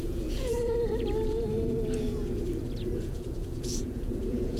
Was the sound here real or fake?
fake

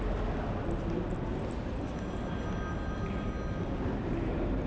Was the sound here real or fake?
real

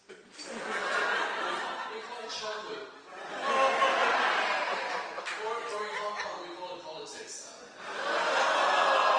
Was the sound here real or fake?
real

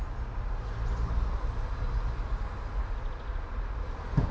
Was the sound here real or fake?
real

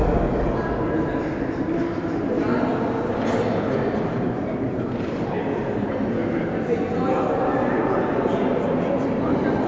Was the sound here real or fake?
real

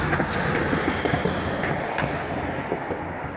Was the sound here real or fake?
real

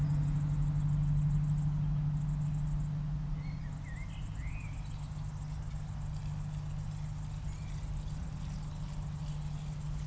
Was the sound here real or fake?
real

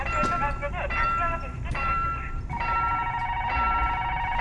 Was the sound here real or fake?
real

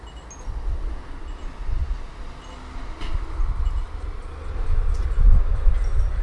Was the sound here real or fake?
real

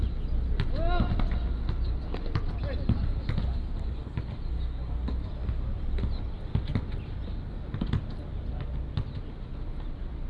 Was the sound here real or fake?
real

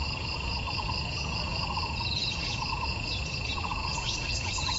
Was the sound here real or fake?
fake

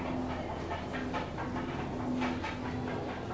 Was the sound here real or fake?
real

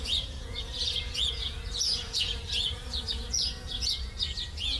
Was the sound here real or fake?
fake